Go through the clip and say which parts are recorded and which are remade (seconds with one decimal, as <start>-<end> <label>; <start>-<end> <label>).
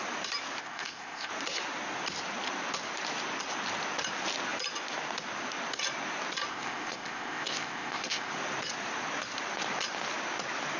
0.0-0.6 recorded; 0.6-1.3 remade; 1.3-6.5 recorded; 6.5-8.3 remade; 8.3-10.8 recorded